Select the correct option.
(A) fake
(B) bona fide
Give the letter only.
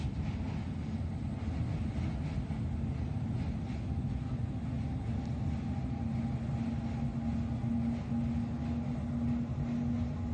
B